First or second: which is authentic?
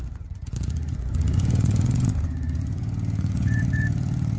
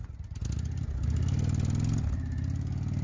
second